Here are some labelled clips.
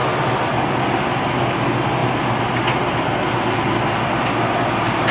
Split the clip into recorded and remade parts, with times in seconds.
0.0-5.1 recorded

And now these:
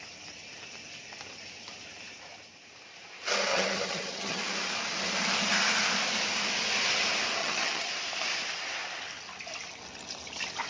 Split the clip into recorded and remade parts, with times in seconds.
0.0-3.5 recorded; 3.5-4.4 remade; 4.4-7.4 recorded; 7.4-7.9 remade; 7.9-10.7 recorded

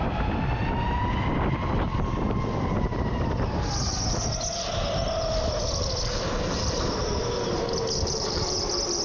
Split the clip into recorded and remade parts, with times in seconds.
0.0-9.0 recorded

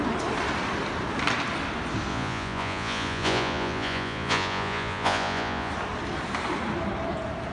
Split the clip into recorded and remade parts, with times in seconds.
0.0-2.1 recorded; 2.1-5.7 remade; 5.7-7.5 recorded

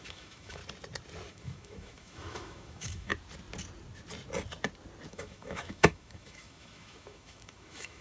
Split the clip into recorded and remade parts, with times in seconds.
0.0-0.6 remade; 0.6-1.3 recorded; 1.3-3.1 remade; 3.1-5.1 recorded; 5.1-8.0 remade